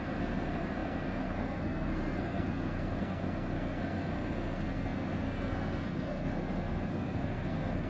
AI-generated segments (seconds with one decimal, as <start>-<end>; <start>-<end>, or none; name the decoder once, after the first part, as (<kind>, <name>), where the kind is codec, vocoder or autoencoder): 0.0-7.9 (codec, SNAC)